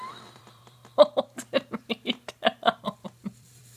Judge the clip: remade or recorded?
remade